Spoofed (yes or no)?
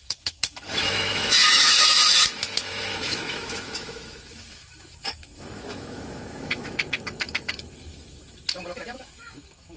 yes